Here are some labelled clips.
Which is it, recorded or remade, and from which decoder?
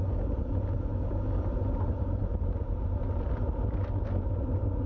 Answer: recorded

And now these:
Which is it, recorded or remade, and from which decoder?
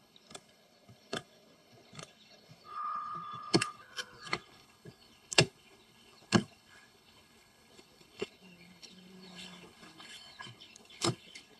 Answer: remade, codec, HILCodec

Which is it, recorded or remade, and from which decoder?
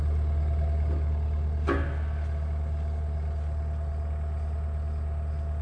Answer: recorded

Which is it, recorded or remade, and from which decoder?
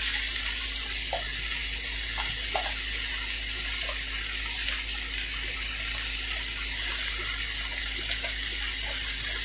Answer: recorded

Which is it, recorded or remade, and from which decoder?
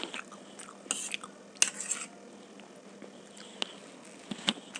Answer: recorded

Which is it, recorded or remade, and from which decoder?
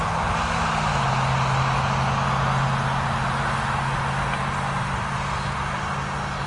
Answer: recorded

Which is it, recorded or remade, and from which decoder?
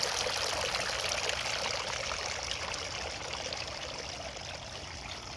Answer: recorded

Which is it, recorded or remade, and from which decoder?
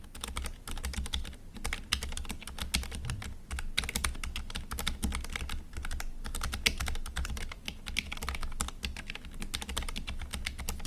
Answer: recorded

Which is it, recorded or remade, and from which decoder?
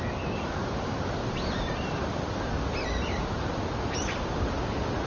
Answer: recorded